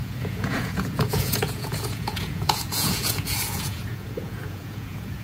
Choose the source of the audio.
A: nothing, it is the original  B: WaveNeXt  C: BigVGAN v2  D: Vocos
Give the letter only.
D